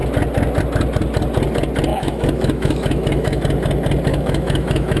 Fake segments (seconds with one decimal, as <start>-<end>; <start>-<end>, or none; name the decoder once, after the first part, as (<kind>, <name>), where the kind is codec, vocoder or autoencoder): 1.9-3.4 (autoencoder, DAC-VAE); 4.1-5.0